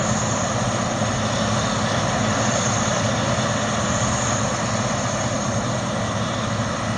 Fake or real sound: real